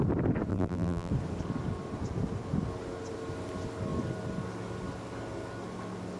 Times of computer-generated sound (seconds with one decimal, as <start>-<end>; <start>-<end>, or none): 0.5-1.1